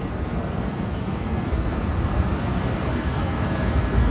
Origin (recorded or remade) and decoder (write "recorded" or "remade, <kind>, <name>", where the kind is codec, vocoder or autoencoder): remade, codec, SNAC